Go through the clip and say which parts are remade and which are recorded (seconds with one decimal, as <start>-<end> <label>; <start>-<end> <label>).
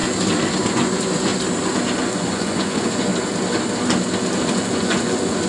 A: 0.0-0.7 recorded; 0.7-1.3 remade; 1.3-2.0 recorded; 2.0-3.1 remade; 3.1-4.6 recorded; 4.6-5.5 remade